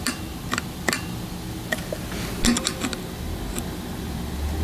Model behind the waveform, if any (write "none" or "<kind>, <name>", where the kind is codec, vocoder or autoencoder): none